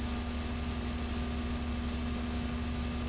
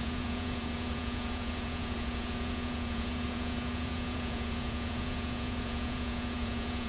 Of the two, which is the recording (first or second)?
first